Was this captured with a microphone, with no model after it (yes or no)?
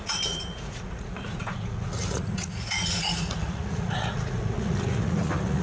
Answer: no